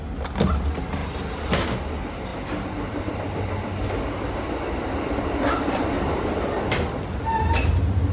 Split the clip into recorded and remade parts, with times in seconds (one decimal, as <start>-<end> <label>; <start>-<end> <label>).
0.0-2.3 recorded; 2.3-7.2 remade; 7.2-8.1 recorded